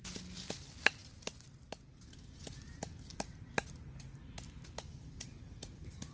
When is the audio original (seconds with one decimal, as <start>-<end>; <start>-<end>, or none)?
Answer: 0.0-6.1